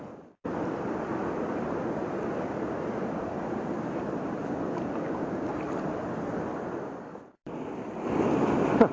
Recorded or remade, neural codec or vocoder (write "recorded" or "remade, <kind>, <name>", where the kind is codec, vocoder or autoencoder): recorded